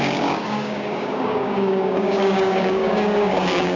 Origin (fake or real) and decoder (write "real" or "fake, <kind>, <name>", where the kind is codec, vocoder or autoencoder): fake, codec, DAC